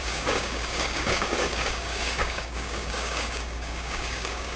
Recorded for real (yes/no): no